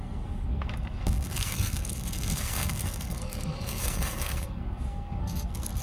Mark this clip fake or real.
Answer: fake